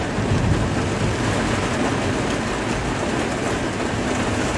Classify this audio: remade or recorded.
recorded